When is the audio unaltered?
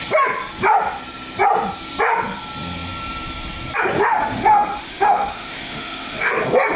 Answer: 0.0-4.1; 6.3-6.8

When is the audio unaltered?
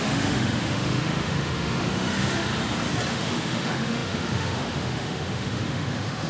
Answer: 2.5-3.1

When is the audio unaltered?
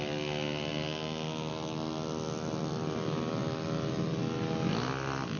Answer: 0.0-5.4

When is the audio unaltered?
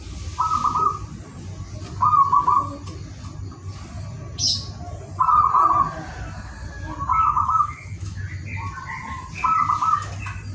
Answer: 0.0-7.1; 8.2-10.5